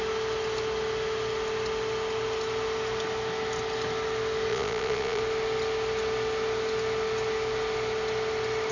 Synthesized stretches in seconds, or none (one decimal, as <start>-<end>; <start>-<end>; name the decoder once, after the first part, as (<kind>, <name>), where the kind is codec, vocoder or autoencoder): 4.5-5.2 (vocoder, Vocos)